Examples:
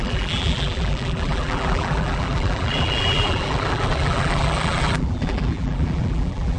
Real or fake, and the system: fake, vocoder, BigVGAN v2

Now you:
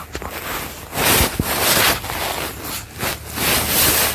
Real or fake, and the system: real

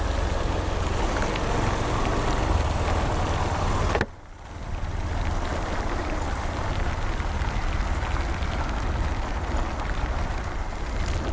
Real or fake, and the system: real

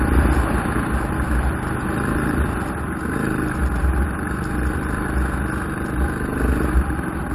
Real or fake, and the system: real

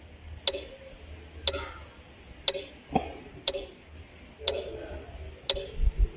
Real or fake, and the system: real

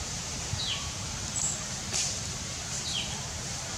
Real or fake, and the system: fake, vocoder, BigVGAN v2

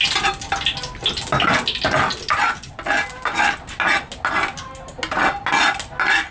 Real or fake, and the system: real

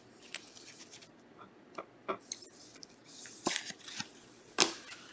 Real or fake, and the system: fake, vocoder, BigVGAN v2